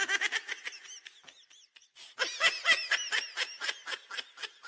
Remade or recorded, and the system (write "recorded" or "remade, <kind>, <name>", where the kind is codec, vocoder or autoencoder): recorded